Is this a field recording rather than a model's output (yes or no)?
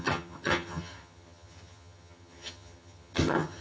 no